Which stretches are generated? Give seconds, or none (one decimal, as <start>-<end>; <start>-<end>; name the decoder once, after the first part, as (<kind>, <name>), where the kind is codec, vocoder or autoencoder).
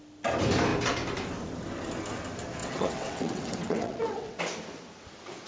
2.6-4.4 (vocoder, WaveNeXt)